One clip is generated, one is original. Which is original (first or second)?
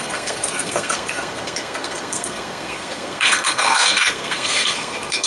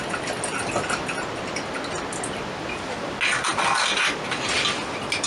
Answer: second